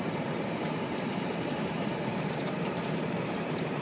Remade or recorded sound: remade